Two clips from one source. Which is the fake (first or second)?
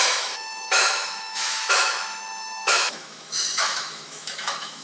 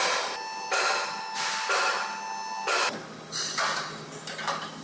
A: first